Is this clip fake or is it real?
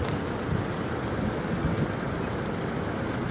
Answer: real